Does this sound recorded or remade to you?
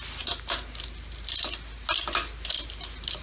recorded